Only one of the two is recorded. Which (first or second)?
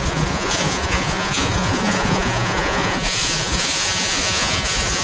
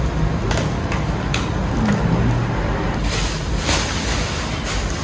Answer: second